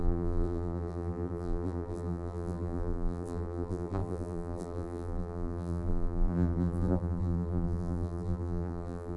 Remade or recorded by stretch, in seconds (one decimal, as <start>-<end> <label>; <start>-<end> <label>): 0.0-9.2 remade